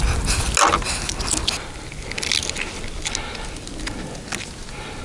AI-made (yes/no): no